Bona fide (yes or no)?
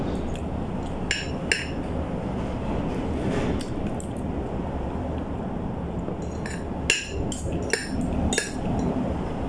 yes